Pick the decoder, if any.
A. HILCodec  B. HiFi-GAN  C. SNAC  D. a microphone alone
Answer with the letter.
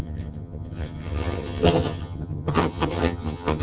B